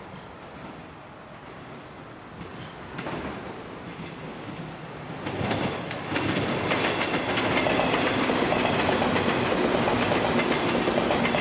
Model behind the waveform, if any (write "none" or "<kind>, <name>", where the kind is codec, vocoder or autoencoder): none